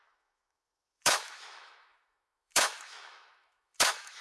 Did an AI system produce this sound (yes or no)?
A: yes